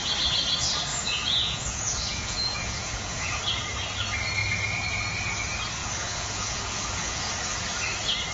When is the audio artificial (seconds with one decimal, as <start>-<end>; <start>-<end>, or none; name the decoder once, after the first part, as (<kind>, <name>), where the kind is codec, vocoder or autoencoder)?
0.9-3.4 (vocoder, Vocos); 5.8-7.3

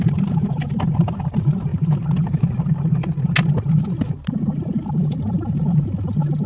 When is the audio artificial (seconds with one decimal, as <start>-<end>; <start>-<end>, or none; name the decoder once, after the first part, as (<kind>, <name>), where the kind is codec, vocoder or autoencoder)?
none